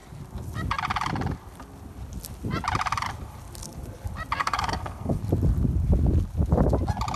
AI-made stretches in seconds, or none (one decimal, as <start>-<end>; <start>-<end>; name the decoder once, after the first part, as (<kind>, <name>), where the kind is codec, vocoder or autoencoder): 4.4-5.2 (codec, SNAC)